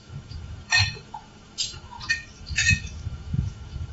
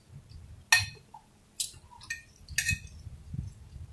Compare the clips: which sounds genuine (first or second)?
second